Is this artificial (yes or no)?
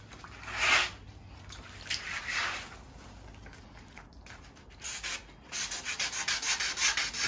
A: no